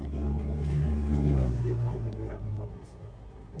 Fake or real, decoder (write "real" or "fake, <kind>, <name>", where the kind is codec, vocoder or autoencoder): fake, codec, SNAC